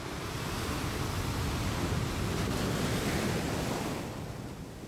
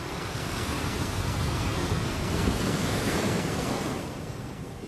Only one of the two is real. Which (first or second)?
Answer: first